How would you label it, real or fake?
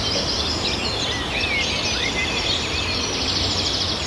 real